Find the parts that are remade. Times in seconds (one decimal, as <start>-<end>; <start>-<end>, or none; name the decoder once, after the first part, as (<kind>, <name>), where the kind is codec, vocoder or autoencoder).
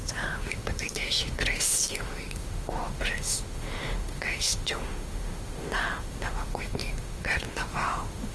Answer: 0.0-8.3 (autoencoder, DAC-VAE)